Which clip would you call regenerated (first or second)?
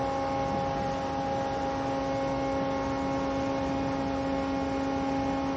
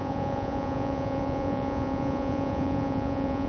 second